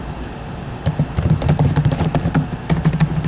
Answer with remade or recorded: recorded